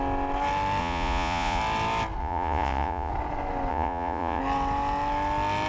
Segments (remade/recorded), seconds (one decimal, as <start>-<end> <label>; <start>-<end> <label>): 0.0-0.8 recorded; 0.8-1.6 remade; 1.6-2.2 recorded; 2.2-3.1 remade; 3.1-3.7 recorded; 3.7-4.4 remade; 4.4-5.7 recorded